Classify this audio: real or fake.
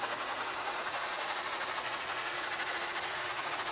fake